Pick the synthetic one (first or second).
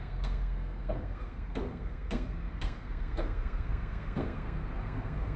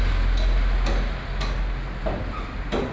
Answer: first